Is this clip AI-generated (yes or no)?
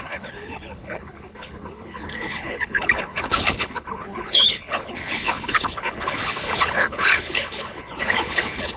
yes